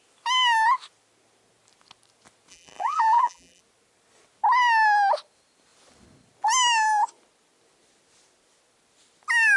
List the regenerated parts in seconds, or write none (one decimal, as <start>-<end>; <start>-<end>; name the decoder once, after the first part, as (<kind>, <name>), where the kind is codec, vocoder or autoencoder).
2.5-3.6 (vocoder, BigVGAN v2)